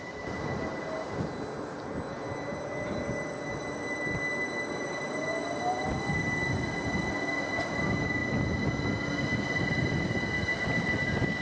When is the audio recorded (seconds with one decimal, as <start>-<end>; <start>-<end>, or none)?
0.0-0.7; 5.9-11.4